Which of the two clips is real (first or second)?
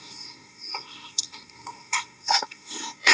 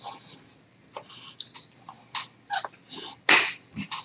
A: second